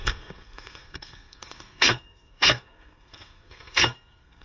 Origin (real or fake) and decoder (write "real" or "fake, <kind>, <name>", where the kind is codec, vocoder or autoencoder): fake, codec, SNAC